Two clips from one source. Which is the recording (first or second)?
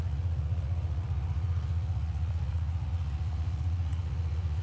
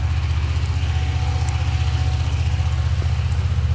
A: second